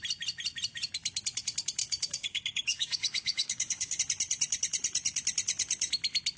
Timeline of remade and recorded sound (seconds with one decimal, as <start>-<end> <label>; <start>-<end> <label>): 0.0-1.8 recorded; 1.8-4.0 remade; 4.0-6.4 recorded